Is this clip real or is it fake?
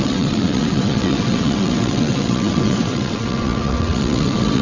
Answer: fake